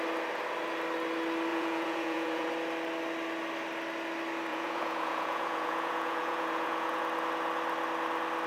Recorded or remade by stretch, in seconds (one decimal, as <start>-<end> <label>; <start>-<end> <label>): 0.0-1.5 recorded; 1.5-2.5 remade; 2.5-4.5 recorded; 4.5-7.0 remade; 7.0-8.5 recorded